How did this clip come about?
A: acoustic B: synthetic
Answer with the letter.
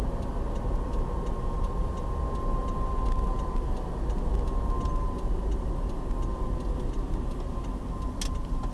A